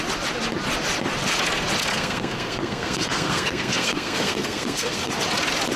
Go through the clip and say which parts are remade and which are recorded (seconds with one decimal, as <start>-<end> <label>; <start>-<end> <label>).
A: 0.0-1.9 recorded; 1.9-5.1 remade; 5.1-5.8 recorded